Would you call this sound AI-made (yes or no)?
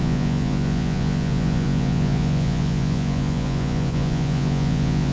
yes